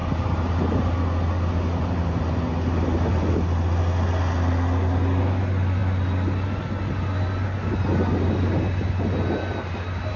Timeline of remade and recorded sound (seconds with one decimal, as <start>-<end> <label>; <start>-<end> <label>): 0.0-10.2 recorded